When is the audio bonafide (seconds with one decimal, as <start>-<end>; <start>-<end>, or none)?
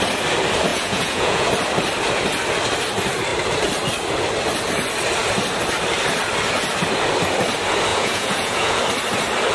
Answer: 0.0-0.7; 1.5-7.9; 8.8-9.5